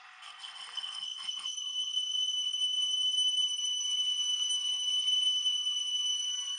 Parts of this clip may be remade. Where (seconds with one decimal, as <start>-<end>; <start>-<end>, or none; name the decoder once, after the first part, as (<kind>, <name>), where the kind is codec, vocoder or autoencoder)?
0.0-6.6 (codec, SNAC)